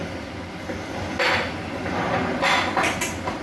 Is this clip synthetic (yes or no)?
no